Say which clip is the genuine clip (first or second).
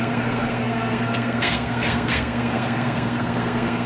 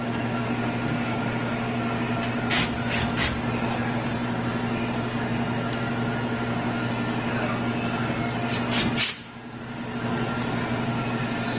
second